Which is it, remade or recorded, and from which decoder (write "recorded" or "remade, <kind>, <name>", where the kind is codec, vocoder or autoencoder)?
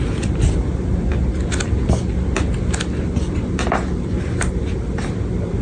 recorded